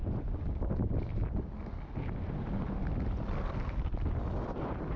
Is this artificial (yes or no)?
no